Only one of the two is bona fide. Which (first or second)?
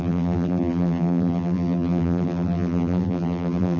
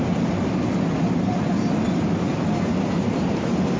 second